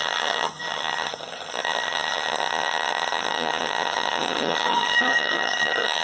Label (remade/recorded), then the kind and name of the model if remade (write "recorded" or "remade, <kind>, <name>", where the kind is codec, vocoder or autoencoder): remade, vocoder, HiFi-GAN